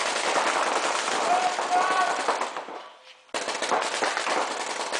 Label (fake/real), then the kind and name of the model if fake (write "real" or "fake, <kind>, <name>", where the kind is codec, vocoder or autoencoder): real